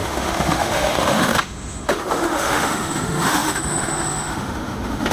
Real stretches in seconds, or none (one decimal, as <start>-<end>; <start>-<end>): none